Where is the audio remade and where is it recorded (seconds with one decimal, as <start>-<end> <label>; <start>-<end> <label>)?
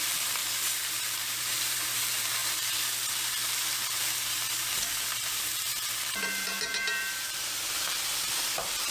0.0-0.4 remade; 0.4-1.0 recorded; 1.0-8.9 remade